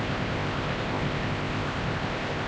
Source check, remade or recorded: remade